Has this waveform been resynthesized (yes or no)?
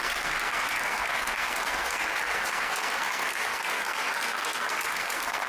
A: yes